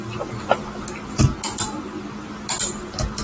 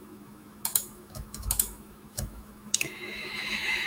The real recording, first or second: first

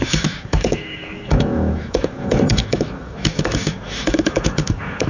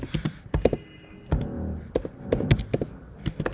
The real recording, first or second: second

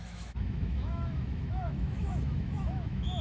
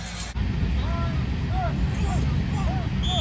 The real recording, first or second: second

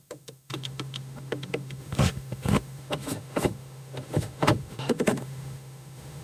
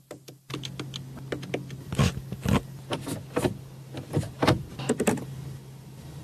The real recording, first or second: second